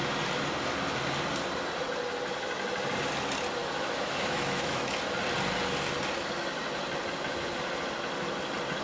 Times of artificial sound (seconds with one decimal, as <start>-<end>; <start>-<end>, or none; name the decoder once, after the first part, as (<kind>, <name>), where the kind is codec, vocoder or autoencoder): 3.6-5.0 (autoencoder, DAC-VAE)